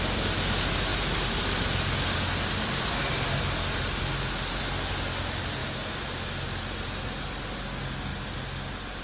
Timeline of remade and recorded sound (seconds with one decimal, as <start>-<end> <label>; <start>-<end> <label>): 0.0-9.0 recorded